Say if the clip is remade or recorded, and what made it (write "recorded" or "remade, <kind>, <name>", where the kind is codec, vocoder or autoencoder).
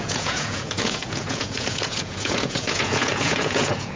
remade, vocoder, Vocos